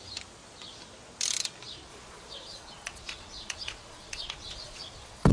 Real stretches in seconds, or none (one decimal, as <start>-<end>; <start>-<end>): 0.0-1.9